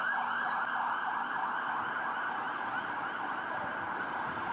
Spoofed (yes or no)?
no